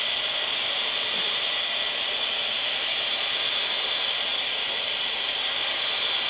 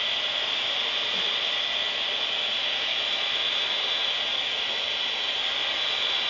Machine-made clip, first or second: first